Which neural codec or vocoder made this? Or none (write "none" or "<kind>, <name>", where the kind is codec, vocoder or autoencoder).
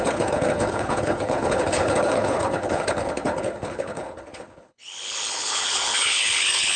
codec, HILCodec